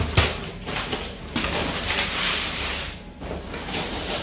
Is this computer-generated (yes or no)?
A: yes